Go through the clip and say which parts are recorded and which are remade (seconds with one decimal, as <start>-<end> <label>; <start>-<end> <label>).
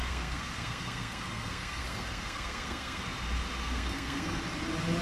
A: 0.0-3.0 remade; 3.0-3.6 recorded; 3.6-4.4 remade; 4.4-5.0 recorded